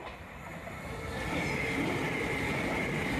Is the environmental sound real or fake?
real